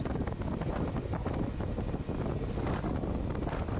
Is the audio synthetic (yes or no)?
no